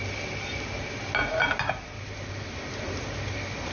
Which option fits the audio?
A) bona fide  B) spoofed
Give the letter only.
A